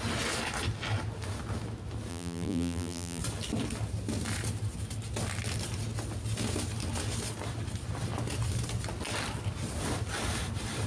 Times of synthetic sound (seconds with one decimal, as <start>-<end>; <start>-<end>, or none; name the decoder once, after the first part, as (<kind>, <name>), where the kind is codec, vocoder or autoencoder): 2.1-3.2 (vocoder, BigVGAN v2)